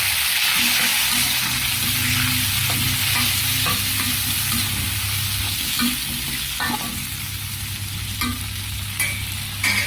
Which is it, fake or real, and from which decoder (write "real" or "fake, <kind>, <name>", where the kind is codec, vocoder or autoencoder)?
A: real